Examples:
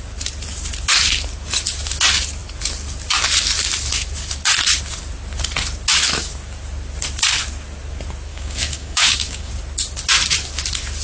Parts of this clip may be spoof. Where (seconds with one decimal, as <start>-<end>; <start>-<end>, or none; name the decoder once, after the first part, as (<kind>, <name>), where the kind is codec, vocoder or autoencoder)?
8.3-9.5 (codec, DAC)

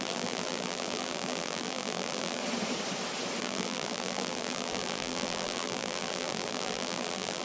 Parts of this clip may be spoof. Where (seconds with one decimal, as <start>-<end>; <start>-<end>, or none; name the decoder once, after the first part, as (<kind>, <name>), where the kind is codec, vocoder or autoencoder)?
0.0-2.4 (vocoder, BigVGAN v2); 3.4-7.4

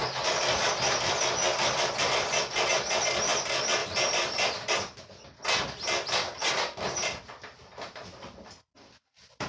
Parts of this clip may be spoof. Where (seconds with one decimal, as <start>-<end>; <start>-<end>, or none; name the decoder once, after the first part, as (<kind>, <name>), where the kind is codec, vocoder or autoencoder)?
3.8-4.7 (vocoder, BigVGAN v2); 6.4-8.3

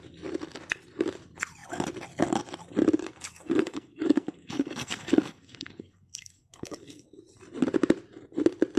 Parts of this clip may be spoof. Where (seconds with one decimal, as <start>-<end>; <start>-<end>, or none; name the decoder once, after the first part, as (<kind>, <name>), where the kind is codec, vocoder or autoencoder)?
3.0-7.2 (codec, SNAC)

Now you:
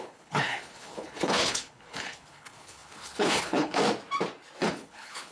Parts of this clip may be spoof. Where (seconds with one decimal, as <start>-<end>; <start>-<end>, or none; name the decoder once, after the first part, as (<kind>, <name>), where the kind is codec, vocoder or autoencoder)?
0.0-3.8 (codec, HILCodec); 4.6-5.3

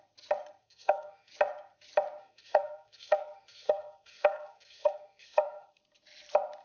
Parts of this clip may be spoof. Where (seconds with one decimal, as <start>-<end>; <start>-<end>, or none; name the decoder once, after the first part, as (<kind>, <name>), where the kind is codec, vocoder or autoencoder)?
0.6-1.3 (codec, SNAC); 2.2-5.8

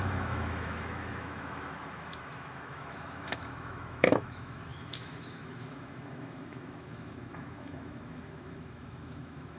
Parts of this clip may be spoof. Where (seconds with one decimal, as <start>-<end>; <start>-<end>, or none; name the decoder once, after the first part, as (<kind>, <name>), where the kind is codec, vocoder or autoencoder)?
0.0-9.6 (autoencoder, DAC-VAE)

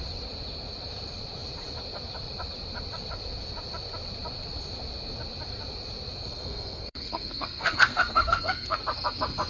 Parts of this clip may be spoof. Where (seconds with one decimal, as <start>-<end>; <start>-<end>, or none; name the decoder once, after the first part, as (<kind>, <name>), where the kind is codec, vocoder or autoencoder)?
6.3-8.8 (codec, SNAC)